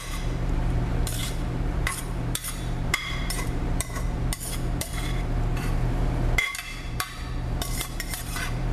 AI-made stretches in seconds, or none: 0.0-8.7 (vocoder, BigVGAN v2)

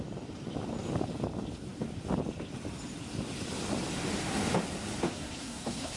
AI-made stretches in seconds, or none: 5.0-6.0 (codec, SNAC)